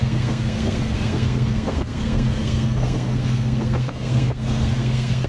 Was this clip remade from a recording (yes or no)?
yes